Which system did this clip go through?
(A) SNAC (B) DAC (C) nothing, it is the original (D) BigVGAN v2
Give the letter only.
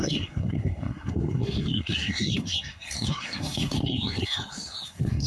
A